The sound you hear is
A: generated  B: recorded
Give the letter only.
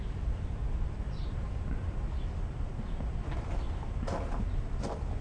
B